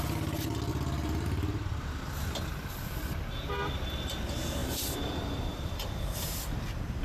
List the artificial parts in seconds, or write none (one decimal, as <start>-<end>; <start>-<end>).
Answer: 0.7-2.7; 4.6-6.0